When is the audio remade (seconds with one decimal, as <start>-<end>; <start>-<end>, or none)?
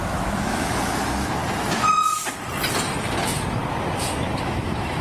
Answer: 0.0-1.4; 4.4-5.0